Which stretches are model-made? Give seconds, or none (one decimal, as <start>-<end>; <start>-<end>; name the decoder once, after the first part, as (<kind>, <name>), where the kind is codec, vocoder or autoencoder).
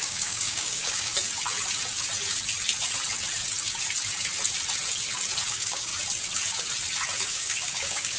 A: 0.0-1.1 (codec, DAC); 5.5-5.9; 7.3-8.2